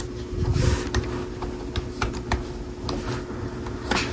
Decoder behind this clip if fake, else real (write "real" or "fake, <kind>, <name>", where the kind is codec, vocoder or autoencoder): real